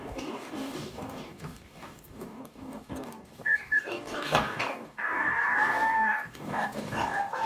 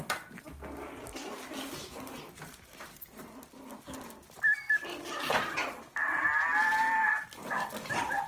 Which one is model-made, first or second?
first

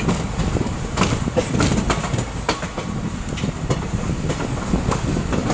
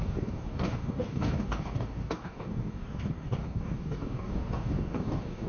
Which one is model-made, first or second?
second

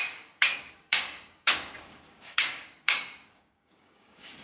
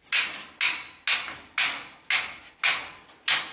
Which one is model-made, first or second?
first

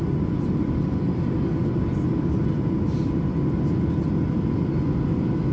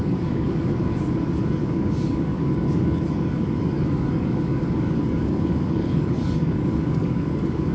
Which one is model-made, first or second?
second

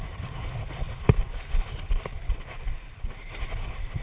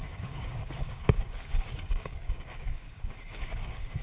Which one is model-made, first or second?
second